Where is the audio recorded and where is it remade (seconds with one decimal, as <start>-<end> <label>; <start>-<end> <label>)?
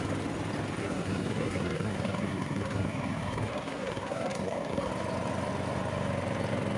0.0-0.8 recorded; 0.8-4.9 remade; 4.9-6.8 recorded